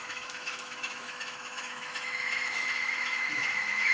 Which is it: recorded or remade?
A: remade